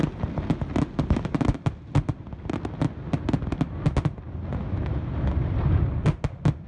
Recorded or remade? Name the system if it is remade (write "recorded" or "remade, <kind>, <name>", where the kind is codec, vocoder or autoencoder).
recorded